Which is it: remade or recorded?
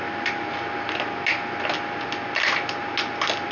recorded